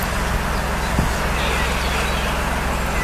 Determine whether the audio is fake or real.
real